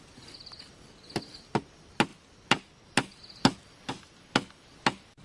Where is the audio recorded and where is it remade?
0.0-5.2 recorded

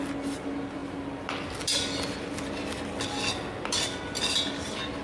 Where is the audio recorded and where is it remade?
0.0-5.0 recorded

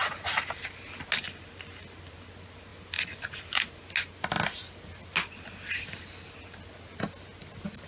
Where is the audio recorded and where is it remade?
0.0-7.9 recorded

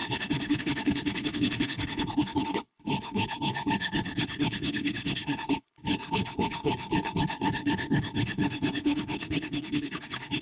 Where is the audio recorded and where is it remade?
0.0-10.4 remade

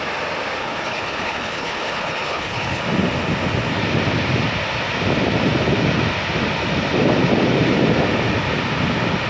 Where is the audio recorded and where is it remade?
0.0-0.6 recorded; 0.6-2.8 remade; 2.8-9.3 recorded